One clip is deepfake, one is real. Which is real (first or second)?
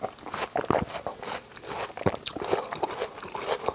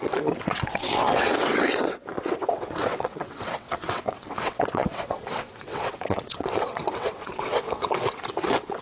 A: first